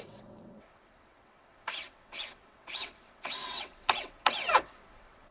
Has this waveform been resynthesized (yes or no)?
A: yes